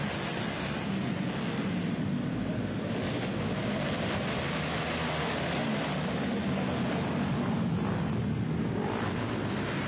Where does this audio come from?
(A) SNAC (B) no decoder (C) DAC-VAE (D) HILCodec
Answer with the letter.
B